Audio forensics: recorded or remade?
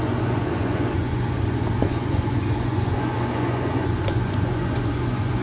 remade